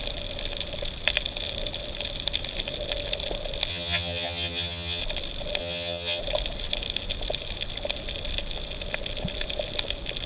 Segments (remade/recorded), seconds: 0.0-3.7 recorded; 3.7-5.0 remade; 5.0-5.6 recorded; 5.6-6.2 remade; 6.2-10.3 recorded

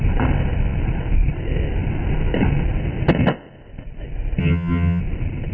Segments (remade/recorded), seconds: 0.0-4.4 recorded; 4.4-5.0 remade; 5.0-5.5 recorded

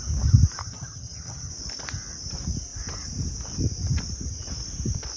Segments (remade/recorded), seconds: 0.0-0.6 recorded; 0.6-1.5 remade; 1.5-5.2 recorded